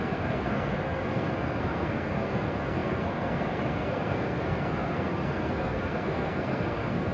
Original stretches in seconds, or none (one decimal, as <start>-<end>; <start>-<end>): none